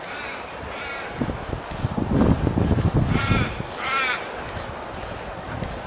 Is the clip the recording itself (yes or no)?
yes